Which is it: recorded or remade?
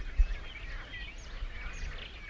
recorded